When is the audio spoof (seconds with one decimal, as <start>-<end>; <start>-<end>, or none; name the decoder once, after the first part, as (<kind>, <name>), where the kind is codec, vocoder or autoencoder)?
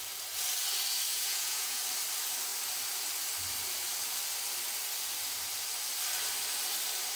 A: 1.1-1.8 (vocoder, Vocos)